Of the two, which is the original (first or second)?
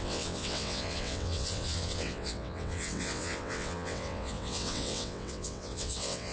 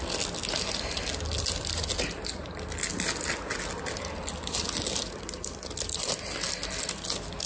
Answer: second